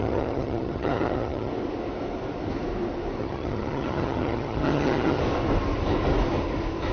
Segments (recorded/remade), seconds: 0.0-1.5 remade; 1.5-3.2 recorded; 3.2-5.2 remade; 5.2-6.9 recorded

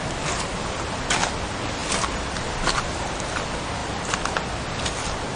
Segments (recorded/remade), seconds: 0.0-3.8 recorded; 3.8-4.4 remade; 4.4-5.4 recorded

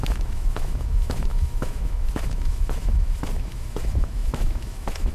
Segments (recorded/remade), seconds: 0.0-5.1 remade

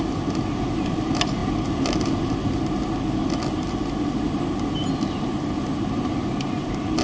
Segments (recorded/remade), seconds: 0.0-7.0 recorded

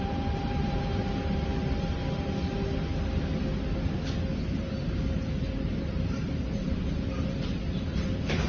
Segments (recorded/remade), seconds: 0.0-2.0 remade; 2.0-4.4 recorded; 4.4-8.5 remade